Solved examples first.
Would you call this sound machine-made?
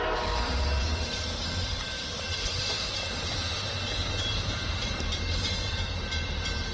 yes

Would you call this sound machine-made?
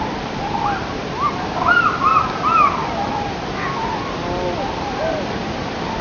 yes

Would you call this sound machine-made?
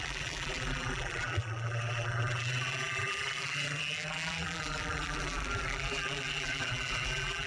yes